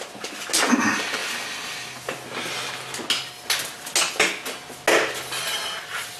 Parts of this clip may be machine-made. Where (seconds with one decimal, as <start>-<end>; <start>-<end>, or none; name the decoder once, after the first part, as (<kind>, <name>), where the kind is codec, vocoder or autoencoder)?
none